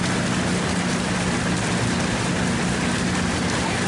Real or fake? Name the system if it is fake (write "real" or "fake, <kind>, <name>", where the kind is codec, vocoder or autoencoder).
real